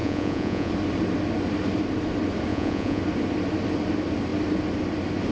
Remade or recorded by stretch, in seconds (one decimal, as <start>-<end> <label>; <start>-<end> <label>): 0.0-0.7 remade; 0.7-2.5 recorded; 2.5-3.0 remade; 3.0-5.3 recorded